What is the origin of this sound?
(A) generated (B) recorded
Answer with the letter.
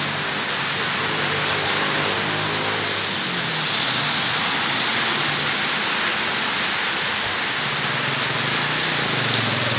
B